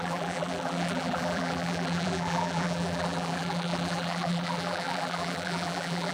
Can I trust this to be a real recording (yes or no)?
no